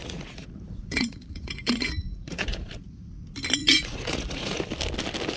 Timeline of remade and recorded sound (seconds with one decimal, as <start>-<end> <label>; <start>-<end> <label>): 0.0-3.2 remade; 3.2-3.6 recorded; 3.6-4.6 remade; 4.6-5.4 recorded